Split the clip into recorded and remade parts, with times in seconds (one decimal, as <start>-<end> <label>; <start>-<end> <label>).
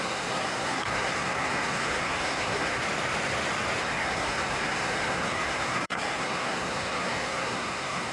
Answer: 0.0-2.8 remade; 2.8-3.8 recorded; 3.8-8.1 remade